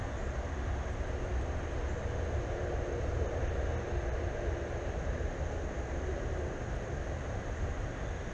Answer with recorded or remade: recorded